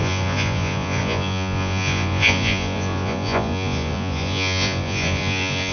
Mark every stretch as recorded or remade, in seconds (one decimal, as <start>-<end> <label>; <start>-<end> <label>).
0.0-5.7 remade